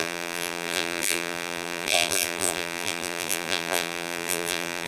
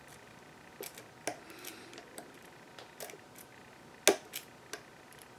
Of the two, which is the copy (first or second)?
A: first